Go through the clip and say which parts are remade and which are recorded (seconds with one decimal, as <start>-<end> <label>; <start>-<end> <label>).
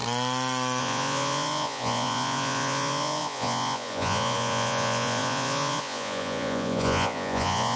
0.0-0.8 recorded; 0.8-7.8 remade